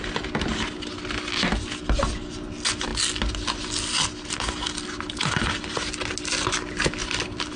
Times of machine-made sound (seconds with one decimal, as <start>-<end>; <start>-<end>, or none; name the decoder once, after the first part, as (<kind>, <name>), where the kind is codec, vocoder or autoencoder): 7.0-7.6 (vocoder, BigVGAN v2)